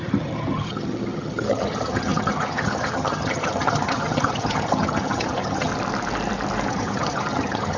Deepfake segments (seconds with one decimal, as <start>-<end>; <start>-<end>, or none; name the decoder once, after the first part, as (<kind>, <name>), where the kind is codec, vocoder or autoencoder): 0.0-5.7 (vocoder, HiFi-GAN); 6.7-7.8